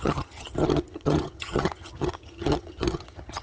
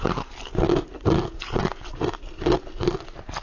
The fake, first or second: first